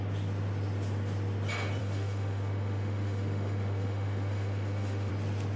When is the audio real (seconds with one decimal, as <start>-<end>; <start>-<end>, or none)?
0.0-1.8; 5.1-5.6